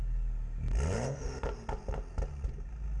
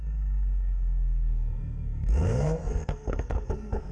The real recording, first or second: first